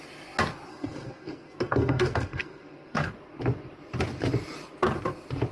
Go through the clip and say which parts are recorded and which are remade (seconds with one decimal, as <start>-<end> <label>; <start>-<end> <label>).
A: 0.0-0.7 recorded; 0.7-3.1 remade; 3.1-5.5 recorded